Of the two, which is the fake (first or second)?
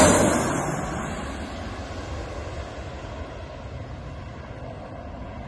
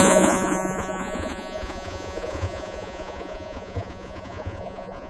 second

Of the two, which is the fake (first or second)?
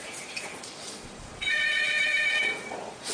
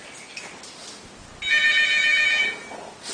first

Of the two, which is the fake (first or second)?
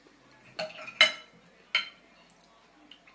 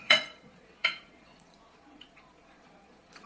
second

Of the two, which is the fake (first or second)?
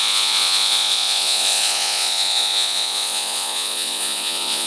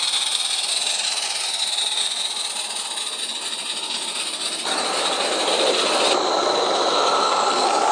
first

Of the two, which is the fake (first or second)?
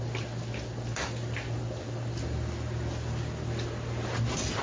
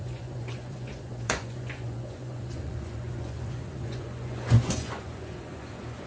second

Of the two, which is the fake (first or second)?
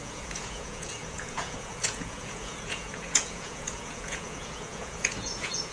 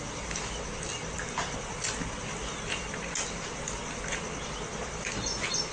first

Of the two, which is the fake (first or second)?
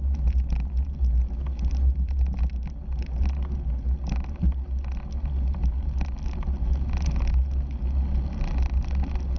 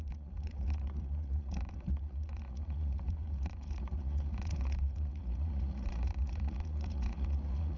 second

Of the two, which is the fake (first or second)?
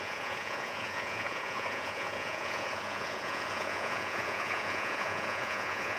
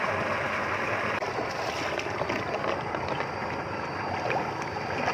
first